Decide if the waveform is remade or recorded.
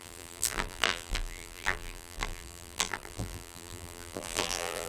remade